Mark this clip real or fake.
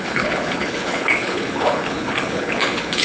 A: fake